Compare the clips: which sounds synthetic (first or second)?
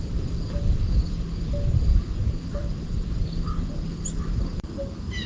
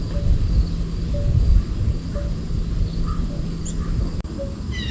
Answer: first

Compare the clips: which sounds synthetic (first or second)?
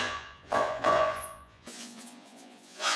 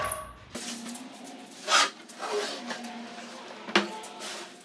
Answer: first